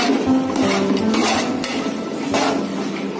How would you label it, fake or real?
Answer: real